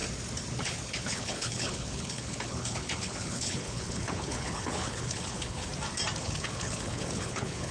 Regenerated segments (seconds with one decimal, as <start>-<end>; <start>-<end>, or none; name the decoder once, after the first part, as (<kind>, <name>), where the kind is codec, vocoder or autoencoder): 0.6-5.7 (codec, HILCodec); 6.2-7.7